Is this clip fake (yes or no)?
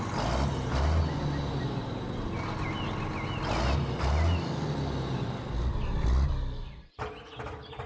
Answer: no